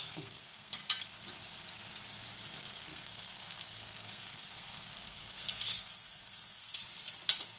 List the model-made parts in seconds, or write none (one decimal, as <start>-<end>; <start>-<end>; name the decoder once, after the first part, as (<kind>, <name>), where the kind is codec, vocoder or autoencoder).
0.0-0.8 (codec, SNAC); 2.5-6.8